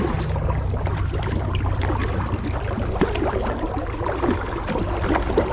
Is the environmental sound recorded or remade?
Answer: recorded